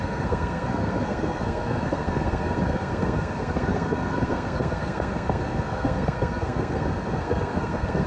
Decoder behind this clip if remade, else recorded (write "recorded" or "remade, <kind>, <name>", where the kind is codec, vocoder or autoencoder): remade, codec, SNAC